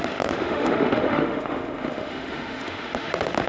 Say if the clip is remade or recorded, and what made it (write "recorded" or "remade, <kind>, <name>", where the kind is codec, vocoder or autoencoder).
remade, autoencoder, DAC-VAE